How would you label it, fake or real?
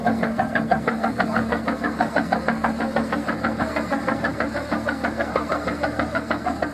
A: fake